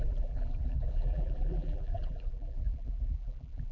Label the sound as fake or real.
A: fake